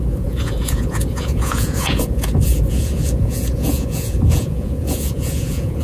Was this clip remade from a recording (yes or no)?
yes